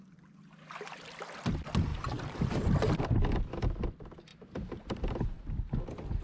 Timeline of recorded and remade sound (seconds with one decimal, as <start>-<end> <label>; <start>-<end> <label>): 0.0-1.9 recorded; 1.9-2.4 remade; 2.4-4.3 recorded; 4.3-5.1 remade; 5.1-6.2 recorded

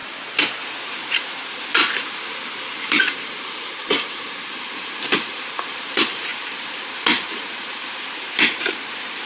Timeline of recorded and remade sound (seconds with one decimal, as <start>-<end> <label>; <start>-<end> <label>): 0.0-0.6 recorded; 0.6-1.0 remade; 1.0-1.7 recorded; 1.7-9.3 remade